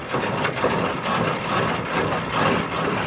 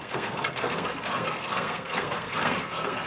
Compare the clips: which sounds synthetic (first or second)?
second